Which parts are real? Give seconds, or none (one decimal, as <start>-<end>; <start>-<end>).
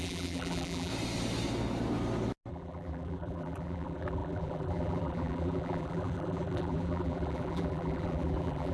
0.9-2.5